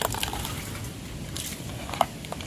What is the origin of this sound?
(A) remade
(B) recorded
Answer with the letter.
B